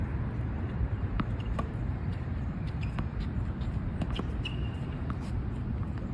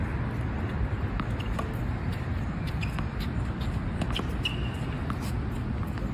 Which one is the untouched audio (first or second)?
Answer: second